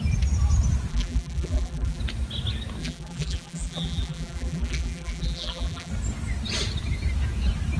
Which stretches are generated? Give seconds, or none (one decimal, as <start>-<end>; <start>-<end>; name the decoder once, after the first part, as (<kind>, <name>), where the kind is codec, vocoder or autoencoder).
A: 0.9-2.0 (vocoder, BigVGAN v2); 2.8-5.9